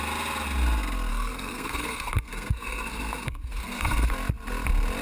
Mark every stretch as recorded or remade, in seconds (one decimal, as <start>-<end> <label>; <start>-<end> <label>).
0.0-1.1 recorded; 1.1-4.1 remade; 4.1-5.0 recorded